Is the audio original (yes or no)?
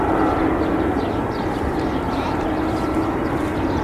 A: yes